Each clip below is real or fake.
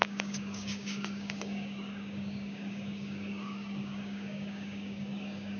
fake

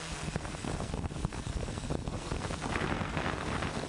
fake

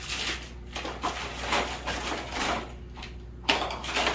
real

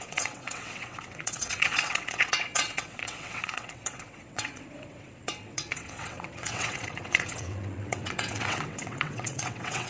fake